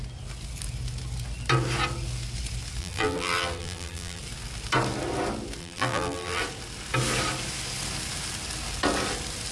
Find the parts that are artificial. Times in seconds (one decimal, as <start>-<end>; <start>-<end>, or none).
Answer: 2.8-4.2; 5.6-6.4